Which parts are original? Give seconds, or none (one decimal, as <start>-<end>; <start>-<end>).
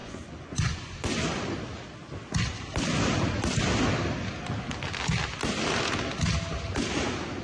1.4-7.4